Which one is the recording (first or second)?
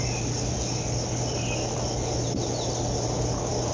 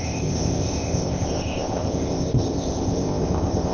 first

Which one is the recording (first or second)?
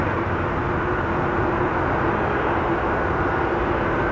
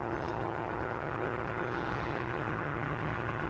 first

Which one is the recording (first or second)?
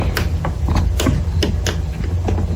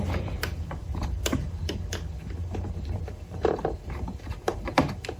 first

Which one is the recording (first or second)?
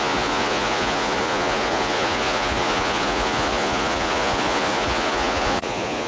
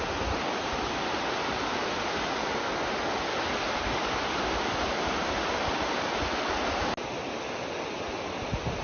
second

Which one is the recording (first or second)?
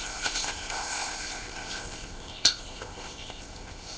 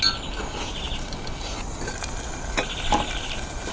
second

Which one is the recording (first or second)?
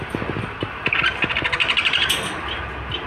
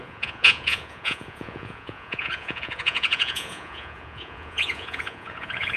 first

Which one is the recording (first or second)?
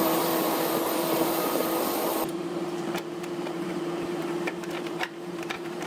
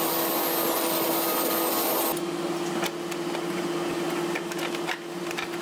second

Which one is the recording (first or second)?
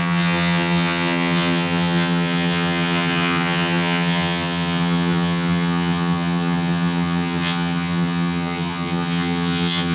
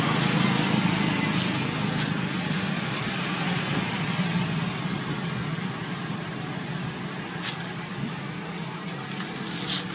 second